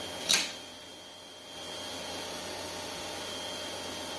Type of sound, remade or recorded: recorded